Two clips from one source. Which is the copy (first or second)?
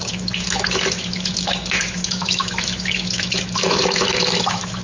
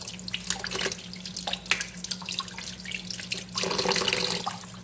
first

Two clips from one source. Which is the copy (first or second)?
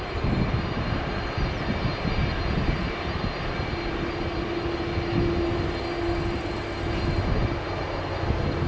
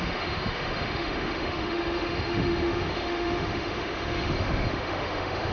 second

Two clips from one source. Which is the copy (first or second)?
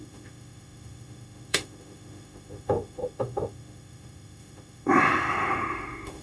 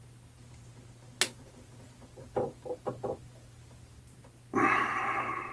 first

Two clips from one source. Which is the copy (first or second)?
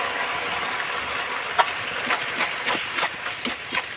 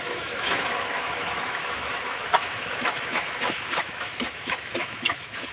second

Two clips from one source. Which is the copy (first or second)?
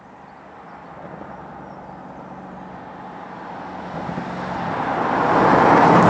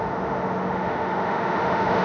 second